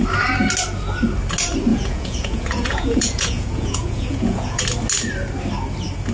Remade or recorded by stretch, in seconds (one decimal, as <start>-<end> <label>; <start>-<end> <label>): 0.0-1.7 recorded; 1.7-4.6 remade; 4.6-6.1 recorded